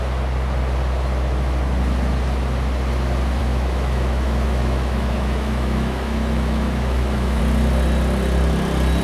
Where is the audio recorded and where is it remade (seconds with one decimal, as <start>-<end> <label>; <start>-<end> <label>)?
0.0-3.4 recorded; 3.4-7.4 remade; 7.4-9.0 recorded